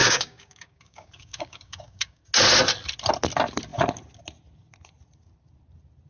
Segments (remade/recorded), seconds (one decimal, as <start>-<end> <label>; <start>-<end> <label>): 0.0-2.2 remade; 2.2-6.1 recorded